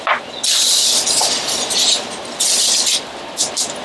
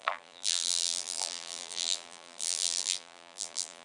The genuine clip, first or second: first